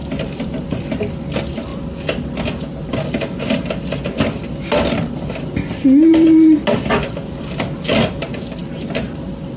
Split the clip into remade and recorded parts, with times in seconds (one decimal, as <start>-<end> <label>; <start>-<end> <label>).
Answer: 0.0-6.1 recorded; 6.1-6.9 remade; 6.9-8.6 recorded; 8.6-9.6 remade